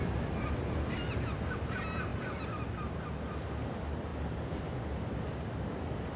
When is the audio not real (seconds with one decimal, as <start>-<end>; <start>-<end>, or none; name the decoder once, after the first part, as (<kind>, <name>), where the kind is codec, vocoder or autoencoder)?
none